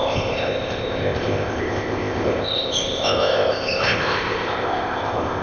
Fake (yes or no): yes